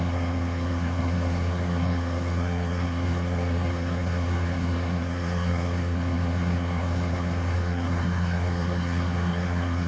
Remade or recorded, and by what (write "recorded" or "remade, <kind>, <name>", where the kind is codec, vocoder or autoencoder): remade, codec, SNAC